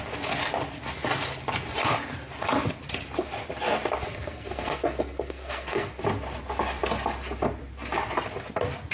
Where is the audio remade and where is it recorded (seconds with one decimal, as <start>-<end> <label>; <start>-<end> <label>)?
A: 0.0-4.1 recorded; 4.1-5.9 remade; 5.9-8.9 recorded